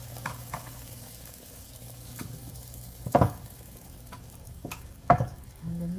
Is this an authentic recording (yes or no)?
no